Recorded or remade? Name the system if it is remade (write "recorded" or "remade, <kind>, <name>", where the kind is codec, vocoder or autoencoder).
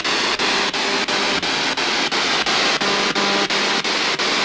recorded